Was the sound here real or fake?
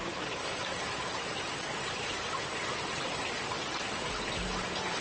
real